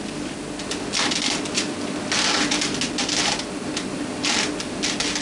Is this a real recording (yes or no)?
yes